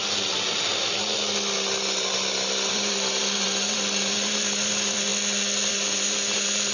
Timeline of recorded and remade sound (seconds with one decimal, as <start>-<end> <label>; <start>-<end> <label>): 0.0-2.7 recorded; 2.7-5.1 remade; 5.1-5.7 recorded; 5.7-6.7 remade